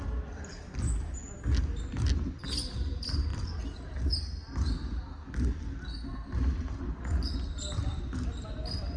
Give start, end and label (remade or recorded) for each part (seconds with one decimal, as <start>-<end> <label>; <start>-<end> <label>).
0.0-9.0 recorded

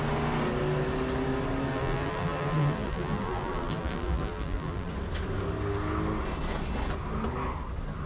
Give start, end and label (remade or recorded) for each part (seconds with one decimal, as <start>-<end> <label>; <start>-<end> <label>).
0.0-1.7 recorded; 1.7-4.9 remade; 4.9-8.1 recorded

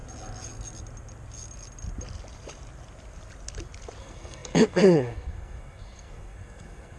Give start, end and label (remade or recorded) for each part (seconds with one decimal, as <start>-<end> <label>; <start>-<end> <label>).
0.0-4.0 recorded; 4.0-7.0 remade